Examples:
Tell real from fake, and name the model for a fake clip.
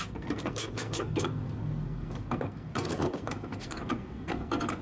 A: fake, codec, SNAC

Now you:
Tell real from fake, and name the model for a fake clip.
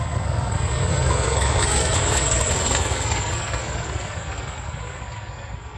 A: fake, codec, SNAC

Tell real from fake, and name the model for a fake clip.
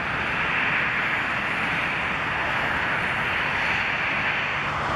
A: real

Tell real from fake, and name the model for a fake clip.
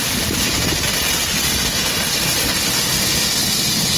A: real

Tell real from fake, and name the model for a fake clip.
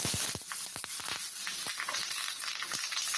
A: real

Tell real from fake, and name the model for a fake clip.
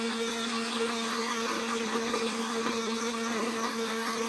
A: fake, codec, SNAC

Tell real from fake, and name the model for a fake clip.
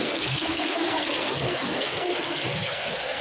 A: fake, codec, SNAC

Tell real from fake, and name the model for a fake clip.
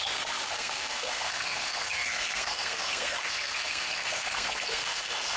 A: fake, codec, SNAC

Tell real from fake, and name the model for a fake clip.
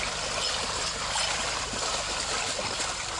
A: real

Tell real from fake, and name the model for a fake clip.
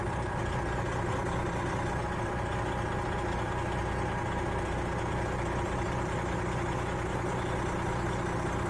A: real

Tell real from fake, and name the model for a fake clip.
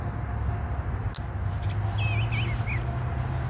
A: real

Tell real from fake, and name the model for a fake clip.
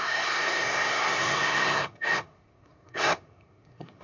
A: fake, codec, SNAC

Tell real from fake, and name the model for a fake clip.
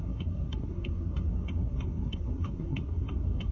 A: fake, codec, SNAC